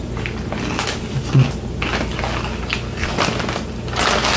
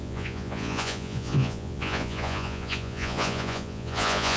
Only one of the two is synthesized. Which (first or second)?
second